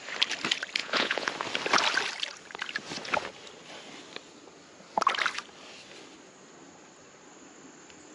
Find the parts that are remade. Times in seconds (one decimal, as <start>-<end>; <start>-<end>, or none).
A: 0.8-1.3